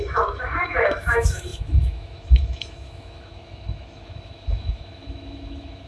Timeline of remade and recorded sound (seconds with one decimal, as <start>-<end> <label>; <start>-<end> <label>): 0.0-5.9 remade